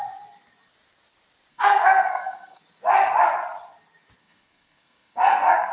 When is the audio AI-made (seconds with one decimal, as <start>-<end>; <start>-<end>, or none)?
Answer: 1.5-2.6; 4.2-5.7